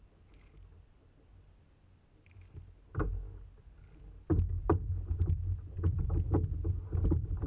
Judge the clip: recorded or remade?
recorded